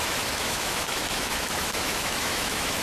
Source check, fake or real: fake